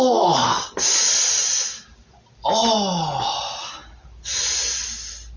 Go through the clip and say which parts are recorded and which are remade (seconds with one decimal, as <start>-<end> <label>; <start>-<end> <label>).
0.0-5.4 recorded